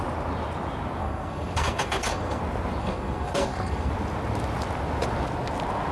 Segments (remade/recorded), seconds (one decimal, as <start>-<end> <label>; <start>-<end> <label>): 0.0-1.0 recorded; 1.0-2.4 remade; 2.4-2.8 recorded; 2.8-3.9 remade; 3.9-5.9 recorded